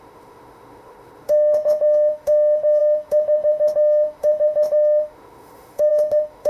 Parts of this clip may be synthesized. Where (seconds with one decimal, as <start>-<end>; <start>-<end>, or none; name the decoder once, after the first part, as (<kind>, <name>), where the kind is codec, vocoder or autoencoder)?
0.0-6.5 (autoencoder, DAC-VAE)